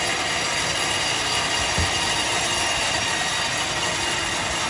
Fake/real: real